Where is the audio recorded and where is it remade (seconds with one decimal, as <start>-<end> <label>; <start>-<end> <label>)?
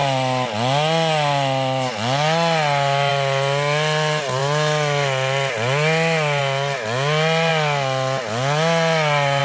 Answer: 0.0-9.4 recorded